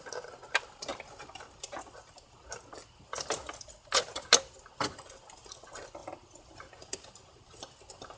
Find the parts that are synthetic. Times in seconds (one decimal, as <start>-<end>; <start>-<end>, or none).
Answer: 0.9-2.2; 6.0-7.1